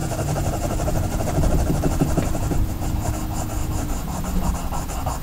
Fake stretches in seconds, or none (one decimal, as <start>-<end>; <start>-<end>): 0.0-3.1; 3.6-4.5